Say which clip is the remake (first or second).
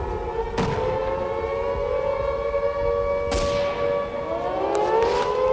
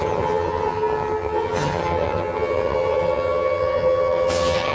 second